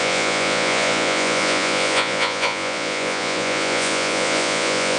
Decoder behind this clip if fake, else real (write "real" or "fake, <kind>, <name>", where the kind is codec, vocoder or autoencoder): fake, vocoder, Vocos